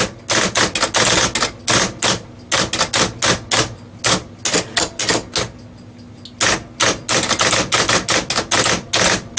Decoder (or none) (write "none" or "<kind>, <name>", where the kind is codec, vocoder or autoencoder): none